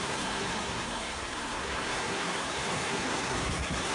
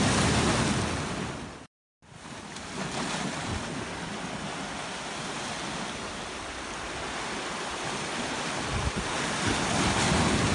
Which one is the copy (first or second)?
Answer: first